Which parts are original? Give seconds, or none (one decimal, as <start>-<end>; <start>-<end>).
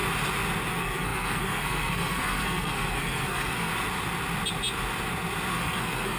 0.0-0.7; 3.7-5.5